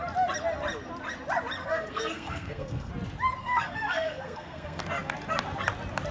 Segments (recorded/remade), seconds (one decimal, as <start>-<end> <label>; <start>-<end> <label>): 0.0-1.6 recorded; 1.6-2.9 remade; 2.9-3.4 recorded; 3.4-4.8 remade; 4.8-6.1 recorded